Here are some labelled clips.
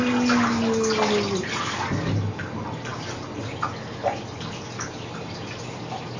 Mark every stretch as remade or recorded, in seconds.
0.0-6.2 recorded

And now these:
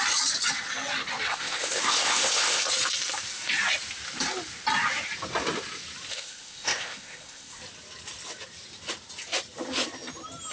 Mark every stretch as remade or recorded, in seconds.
0.0-1.3 recorded; 1.3-2.7 remade; 2.7-6.1 recorded; 6.1-7.6 remade; 7.6-10.5 recorded